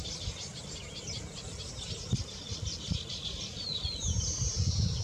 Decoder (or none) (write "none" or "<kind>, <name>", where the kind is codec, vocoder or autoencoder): none